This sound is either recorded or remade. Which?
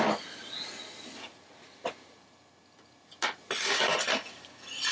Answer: recorded